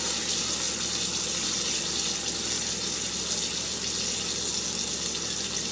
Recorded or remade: recorded